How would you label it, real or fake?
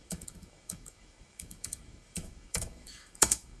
fake